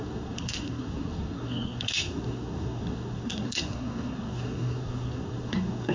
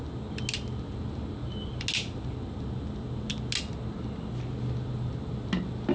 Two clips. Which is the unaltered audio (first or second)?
second